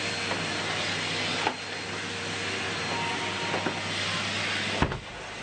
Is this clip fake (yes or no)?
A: no